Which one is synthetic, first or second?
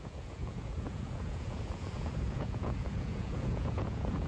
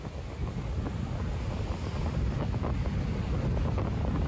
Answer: first